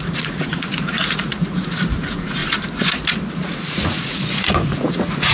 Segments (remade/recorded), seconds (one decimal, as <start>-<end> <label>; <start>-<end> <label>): 0.0-2.4 remade; 2.4-3.3 recorded; 3.3-5.3 remade